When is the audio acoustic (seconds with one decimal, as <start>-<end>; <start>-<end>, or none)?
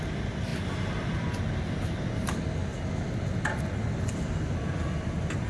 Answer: 0.0-5.5